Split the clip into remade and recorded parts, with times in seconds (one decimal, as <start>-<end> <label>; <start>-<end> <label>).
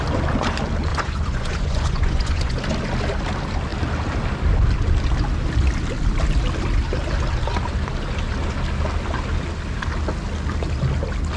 0.0-0.9 recorded; 0.9-2.6 remade; 2.6-11.4 recorded